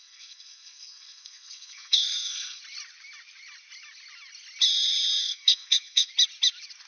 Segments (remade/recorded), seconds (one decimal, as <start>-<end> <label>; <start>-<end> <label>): 0.0-2.6 remade; 2.6-5.2 recorded; 5.2-6.1 remade; 6.1-6.9 recorded